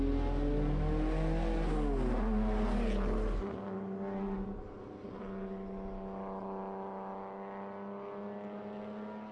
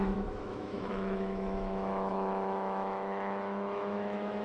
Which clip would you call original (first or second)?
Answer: first